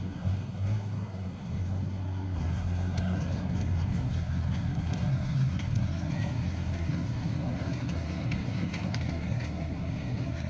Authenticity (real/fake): fake